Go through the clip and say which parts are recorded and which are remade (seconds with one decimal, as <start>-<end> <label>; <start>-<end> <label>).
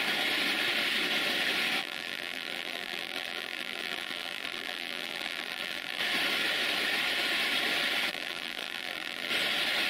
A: 0.0-1.8 recorded; 1.8-6.0 remade; 6.0-8.1 recorded; 8.1-9.3 remade; 9.3-9.9 recorded